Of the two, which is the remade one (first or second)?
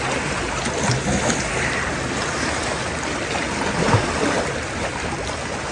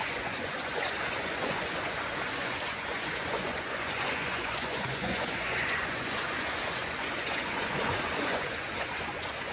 second